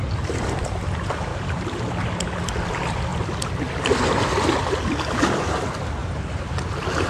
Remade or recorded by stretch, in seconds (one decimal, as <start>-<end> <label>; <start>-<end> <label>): 0.0-1.3 recorded; 1.3-1.8 remade; 1.8-6.0 recorded; 6.0-6.6 remade; 6.6-7.1 recorded